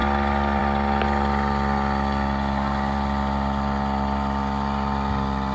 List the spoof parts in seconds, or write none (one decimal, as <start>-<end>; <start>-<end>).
none